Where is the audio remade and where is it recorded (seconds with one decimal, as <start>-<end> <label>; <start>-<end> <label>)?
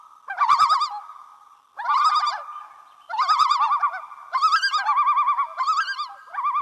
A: 0.0-6.6 recorded